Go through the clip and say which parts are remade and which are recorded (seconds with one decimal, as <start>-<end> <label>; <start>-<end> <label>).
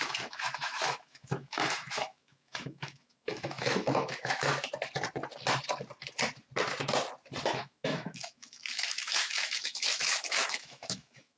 0.0-4.5 remade; 4.5-7.6 recorded; 7.6-11.4 remade